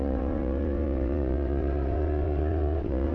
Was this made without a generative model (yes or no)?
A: no